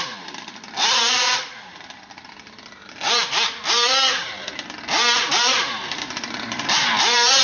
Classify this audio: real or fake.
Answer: fake